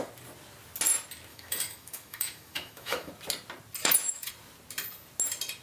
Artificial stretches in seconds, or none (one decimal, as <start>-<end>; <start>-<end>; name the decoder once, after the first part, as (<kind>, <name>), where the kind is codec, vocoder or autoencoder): 1.3-3.1 (autoencoder, DAC-VAE); 3.8-4.3